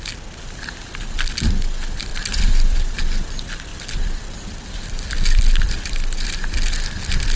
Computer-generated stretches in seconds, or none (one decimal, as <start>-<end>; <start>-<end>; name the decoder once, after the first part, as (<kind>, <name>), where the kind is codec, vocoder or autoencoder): 2.1-3.0 (vocoder, BigVGAN v2); 3.7-6.8